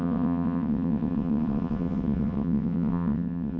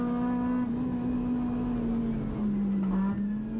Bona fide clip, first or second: second